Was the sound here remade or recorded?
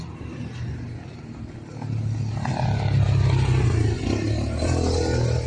recorded